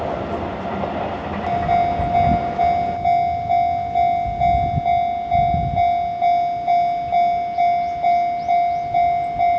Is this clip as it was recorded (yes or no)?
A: yes